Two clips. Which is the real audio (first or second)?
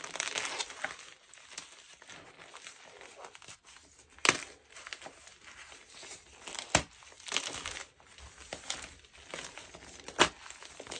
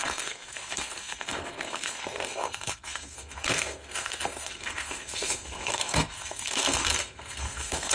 first